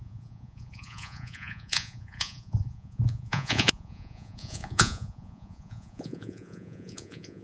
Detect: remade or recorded remade